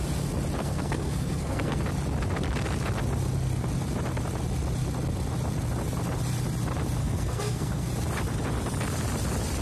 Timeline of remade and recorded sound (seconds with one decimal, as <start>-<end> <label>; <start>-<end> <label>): 0.0-0.6 recorded; 0.6-1.8 remade; 1.8-7.0 recorded; 7.0-7.9 remade; 7.9-9.6 recorded

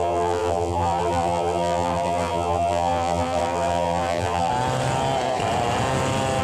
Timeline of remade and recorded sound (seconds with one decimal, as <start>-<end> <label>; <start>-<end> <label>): 0.0-4.5 remade; 4.5-6.4 recorded

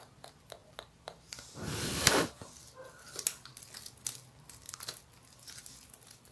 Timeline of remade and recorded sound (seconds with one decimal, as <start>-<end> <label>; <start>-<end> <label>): 0.0-6.3 recorded

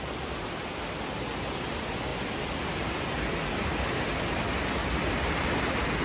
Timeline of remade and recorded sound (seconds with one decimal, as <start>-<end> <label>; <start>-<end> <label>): 0.0-6.0 recorded